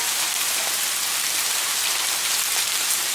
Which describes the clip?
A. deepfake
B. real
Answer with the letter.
B